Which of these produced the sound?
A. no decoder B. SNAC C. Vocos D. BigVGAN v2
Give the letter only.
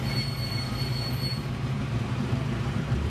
D